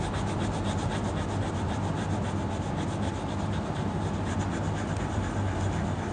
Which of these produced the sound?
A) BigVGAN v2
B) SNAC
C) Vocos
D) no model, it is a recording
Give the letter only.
D